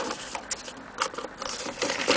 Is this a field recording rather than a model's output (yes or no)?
yes